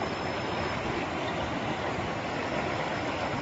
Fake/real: real